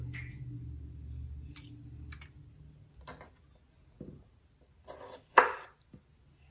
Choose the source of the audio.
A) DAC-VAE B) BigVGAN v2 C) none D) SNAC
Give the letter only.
C